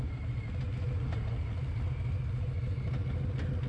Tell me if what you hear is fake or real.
real